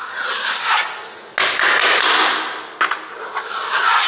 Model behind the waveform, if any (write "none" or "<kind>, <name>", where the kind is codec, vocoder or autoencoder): none